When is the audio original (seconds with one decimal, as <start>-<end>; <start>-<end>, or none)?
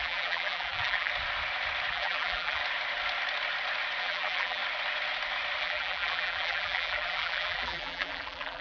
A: 1.1-1.9; 2.6-4.0; 4.6-5.6